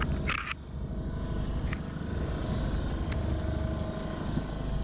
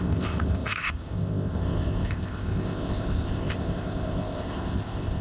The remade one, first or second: second